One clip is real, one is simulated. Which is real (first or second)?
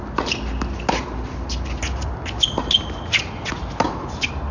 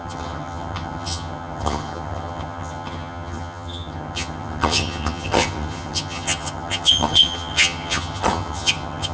first